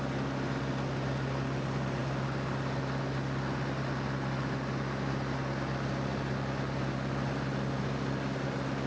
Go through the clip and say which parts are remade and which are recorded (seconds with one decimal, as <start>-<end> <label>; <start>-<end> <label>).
0.0-8.9 recorded